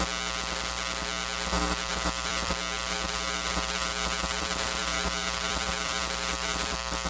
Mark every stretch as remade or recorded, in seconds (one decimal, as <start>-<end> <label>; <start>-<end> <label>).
0.0-1.9 recorded; 1.9-2.5 remade; 2.5-2.9 recorded; 2.9-7.1 remade